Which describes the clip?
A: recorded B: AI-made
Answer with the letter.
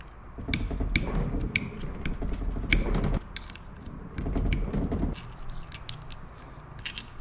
A